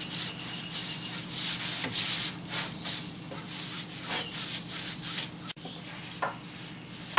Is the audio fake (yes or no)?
no